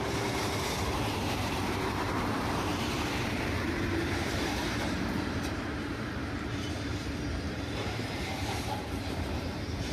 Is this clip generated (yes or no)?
yes